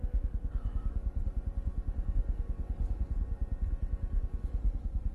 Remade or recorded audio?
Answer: recorded